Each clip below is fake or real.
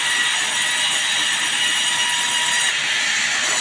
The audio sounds real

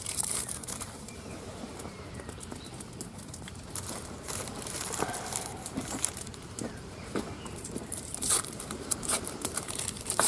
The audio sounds fake